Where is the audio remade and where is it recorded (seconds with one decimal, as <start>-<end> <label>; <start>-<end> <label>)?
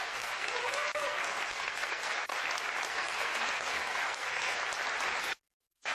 0.0-2.3 remade; 2.3-2.9 recorded; 2.9-4.6 remade; 4.6-5.2 recorded; 5.2-5.9 remade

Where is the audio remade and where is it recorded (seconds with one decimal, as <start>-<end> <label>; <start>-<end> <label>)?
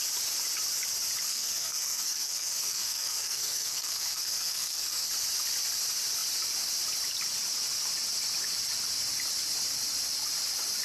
0.0-1.3 recorded; 1.3-5.1 remade; 5.1-10.8 recorded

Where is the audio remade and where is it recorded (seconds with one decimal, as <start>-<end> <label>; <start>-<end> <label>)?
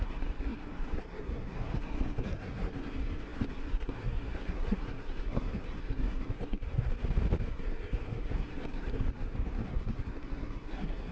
0.0-6.9 remade; 6.9-7.5 recorded; 7.5-11.1 remade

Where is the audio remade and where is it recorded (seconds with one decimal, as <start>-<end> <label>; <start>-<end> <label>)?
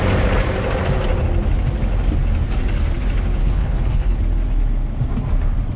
0.0-3.4 recorded; 3.4-4.2 remade; 4.2-5.8 recorded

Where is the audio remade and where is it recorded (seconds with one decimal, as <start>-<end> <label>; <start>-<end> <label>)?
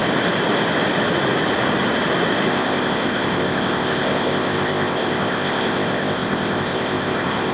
0.0-2.5 recorded; 2.5-7.5 remade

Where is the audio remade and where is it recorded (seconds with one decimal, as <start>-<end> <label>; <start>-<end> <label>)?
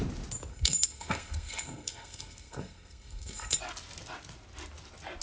0.0-0.5 recorded; 0.5-3.6 remade; 3.6-5.2 recorded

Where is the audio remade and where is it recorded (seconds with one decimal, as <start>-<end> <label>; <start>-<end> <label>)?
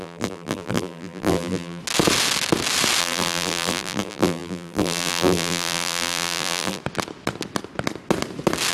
0.0-1.8 remade; 1.8-3.0 recorded; 3.0-6.8 remade; 6.8-8.7 recorded